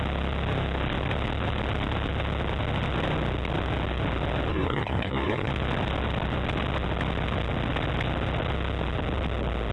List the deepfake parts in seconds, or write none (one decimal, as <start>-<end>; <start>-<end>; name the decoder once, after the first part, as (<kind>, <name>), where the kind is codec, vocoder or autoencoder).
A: 4.5-5.5 (codec, SNAC)